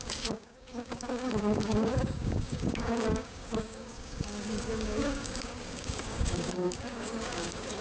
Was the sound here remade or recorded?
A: remade